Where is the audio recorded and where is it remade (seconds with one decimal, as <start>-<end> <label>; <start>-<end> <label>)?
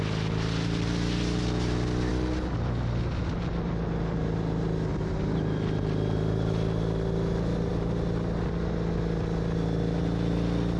0.0-10.8 recorded